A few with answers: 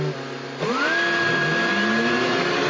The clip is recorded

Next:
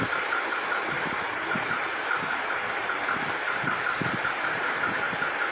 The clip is remade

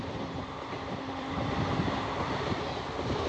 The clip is remade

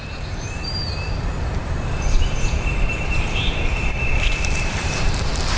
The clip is remade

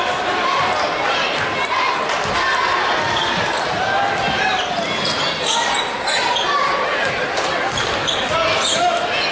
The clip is recorded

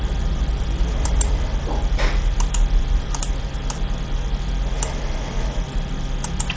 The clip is remade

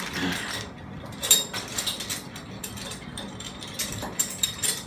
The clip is remade